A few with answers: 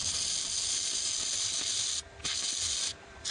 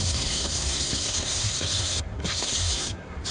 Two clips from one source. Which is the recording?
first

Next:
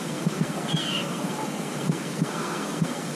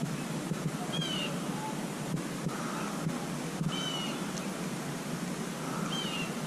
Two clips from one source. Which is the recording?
second